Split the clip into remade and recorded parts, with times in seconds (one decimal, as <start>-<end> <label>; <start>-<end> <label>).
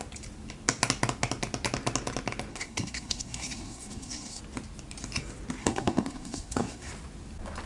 0.0-2.5 recorded; 2.5-4.4 remade; 4.4-5.6 recorded; 5.6-6.9 remade; 6.9-7.7 recorded